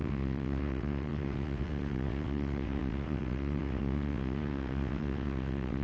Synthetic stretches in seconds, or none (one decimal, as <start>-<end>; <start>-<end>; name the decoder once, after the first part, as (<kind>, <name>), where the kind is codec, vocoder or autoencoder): 0.0-5.8 (vocoder, WaveNeXt)